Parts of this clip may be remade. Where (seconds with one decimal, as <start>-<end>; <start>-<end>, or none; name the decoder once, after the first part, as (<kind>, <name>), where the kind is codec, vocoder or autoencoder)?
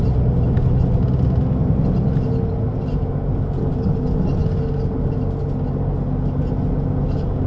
none